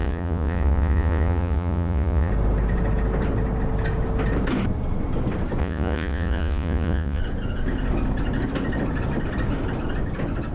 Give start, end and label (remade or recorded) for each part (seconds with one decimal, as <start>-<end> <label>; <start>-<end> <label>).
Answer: 0.0-2.3 remade; 2.3-5.6 recorded; 5.6-7.2 remade; 7.2-10.5 recorded